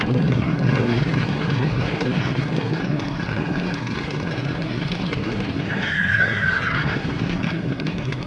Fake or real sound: fake